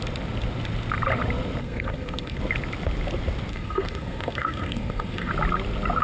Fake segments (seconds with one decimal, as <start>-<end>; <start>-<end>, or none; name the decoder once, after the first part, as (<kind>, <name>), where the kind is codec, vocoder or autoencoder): 1.6-2.4 (codec, SNAC); 3.5-5.3